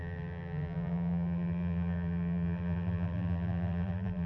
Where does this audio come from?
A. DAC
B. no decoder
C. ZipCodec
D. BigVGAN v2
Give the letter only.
D